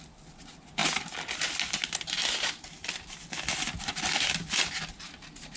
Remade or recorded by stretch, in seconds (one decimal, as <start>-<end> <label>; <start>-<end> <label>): 0.0-5.6 recorded